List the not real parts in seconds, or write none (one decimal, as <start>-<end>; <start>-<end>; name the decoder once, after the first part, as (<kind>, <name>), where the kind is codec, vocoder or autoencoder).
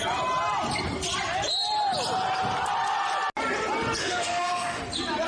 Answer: 4.0-4.8 (autoencoder, DAC-VAE)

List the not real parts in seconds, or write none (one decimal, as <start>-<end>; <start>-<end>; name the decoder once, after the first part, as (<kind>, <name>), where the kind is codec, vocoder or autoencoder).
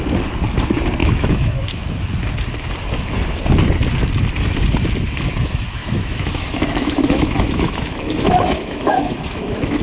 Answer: 1.0-1.8 (autoencoder, DAC-VAE); 5.8-9.8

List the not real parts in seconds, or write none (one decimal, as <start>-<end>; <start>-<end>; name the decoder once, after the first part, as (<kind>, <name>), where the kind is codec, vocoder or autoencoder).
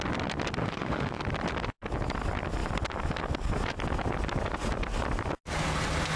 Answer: 0.6-1.2 (autoencoder, DAC-VAE)